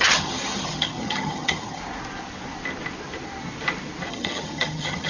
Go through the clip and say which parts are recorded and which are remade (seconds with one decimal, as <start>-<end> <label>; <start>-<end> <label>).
0.0-1.8 remade; 1.8-4.1 recorded; 4.1-5.1 remade